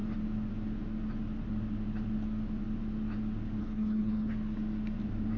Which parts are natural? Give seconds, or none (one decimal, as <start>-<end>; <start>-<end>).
0.0-3.6; 4.3-5.4